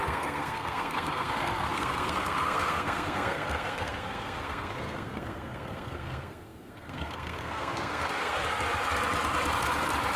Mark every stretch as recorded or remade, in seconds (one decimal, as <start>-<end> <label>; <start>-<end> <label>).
0.0-8.4 remade; 8.4-10.2 recorded